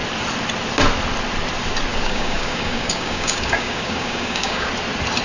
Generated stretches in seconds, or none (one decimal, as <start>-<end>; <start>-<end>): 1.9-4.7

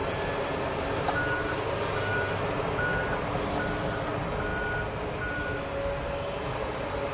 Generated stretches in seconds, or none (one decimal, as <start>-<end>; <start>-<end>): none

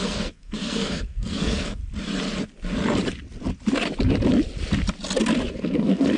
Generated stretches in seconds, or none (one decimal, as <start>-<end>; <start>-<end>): 0.0-1.8; 5.5-6.2

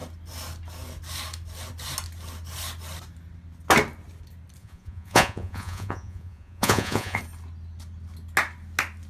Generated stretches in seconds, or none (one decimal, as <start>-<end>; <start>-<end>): 4.6-7.2